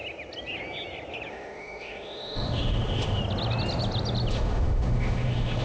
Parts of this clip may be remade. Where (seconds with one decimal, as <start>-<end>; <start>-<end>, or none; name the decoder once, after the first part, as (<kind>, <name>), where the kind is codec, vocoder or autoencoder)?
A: 1.3-3.2 (autoencoder, DAC-VAE); 4.3-5.6